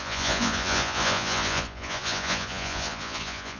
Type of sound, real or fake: fake